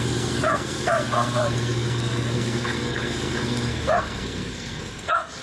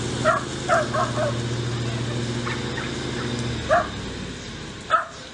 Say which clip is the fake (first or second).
first